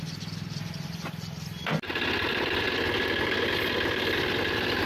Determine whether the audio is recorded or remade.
recorded